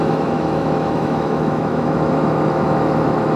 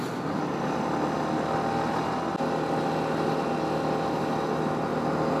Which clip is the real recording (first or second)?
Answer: second